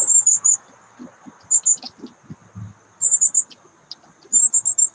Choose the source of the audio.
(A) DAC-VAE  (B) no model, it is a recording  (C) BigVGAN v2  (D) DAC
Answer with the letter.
B